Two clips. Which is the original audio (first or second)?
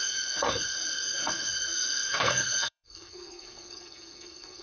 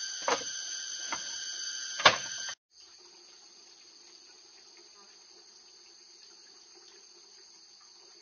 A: second